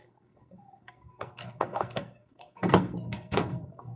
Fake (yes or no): yes